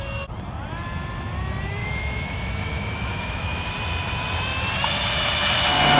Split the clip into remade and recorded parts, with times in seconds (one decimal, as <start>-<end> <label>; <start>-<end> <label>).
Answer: 0.0-1.8 recorded; 1.8-3.7 remade; 3.7-6.0 recorded